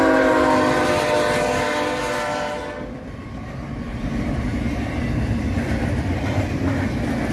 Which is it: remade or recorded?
recorded